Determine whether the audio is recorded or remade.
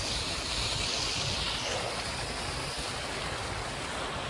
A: recorded